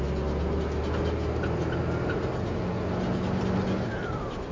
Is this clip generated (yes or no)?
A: no